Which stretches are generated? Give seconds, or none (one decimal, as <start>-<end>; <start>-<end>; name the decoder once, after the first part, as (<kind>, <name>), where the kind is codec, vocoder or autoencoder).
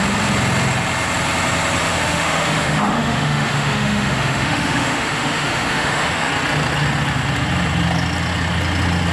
1.8-6.3 (autoencoder, DAC-VAE)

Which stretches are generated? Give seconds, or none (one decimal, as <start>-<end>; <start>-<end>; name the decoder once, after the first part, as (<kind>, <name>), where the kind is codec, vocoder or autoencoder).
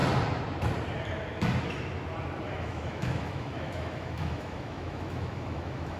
2.5-6.0 (autoencoder, DAC-VAE)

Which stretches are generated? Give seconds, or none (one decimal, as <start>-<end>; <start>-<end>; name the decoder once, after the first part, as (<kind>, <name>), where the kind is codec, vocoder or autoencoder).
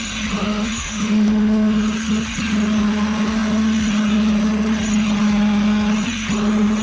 0.4-1.8 (autoencoder, DAC-VAE)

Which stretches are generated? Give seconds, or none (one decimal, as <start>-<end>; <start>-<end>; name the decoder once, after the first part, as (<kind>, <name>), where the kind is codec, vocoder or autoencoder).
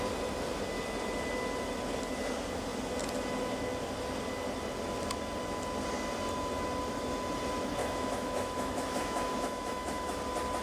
7.8-10.2 (autoencoder, DAC-VAE)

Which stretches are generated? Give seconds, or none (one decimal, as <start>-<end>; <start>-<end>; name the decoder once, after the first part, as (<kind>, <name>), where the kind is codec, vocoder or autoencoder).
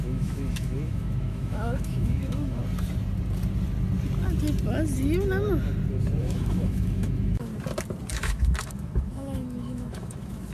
0.0-2.6 (autoencoder, DAC-VAE); 6.2-7.5; 8.1-10.5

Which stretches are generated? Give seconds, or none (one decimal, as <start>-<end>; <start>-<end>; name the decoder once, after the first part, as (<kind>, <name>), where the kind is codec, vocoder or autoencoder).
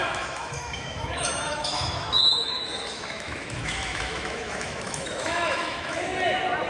0.0-6.1 (autoencoder, DAC-VAE)